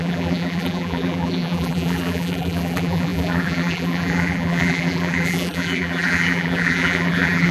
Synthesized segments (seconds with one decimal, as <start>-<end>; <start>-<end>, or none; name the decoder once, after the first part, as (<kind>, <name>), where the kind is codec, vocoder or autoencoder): 0.0-7.5 (vocoder, BigVGAN v2)

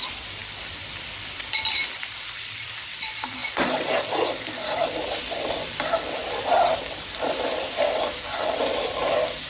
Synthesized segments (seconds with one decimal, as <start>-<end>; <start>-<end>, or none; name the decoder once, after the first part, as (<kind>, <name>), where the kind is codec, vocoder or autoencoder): 0.0-9.5 (vocoder, BigVGAN v2)

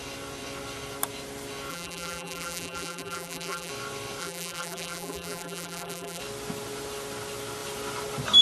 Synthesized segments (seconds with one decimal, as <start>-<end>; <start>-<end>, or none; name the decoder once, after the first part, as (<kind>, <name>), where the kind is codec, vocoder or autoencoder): 1.7-3.7 (vocoder, BigVGAN v2); 4.2-6.2